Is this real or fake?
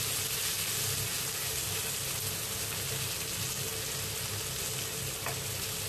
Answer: real